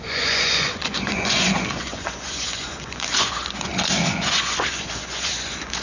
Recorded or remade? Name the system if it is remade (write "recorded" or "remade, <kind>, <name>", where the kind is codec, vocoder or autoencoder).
remade, vocoder, Vocos